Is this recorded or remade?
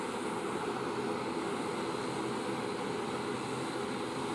recorded